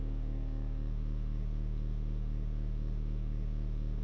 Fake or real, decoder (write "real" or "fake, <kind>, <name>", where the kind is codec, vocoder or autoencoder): fake, autoencoder, DAC-VAE